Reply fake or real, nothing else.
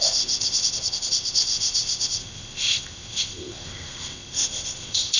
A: fake